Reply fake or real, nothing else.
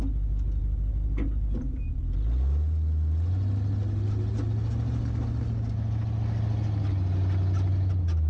real